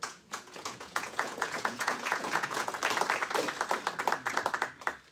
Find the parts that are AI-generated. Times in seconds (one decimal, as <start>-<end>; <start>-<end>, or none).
0.0-2.7